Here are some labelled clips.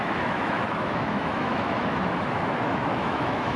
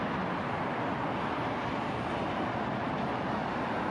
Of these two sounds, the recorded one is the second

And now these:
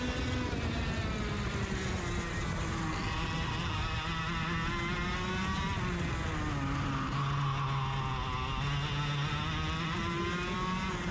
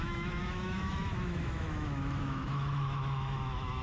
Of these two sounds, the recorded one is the first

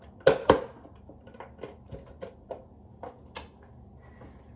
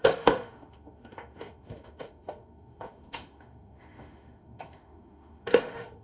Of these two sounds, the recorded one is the first